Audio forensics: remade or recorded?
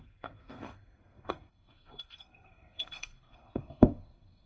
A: remade